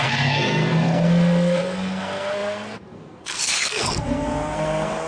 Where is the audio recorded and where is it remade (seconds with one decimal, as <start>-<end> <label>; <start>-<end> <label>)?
0.0-5.1 remade